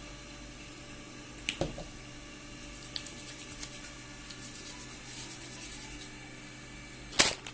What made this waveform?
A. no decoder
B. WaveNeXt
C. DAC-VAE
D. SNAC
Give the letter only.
A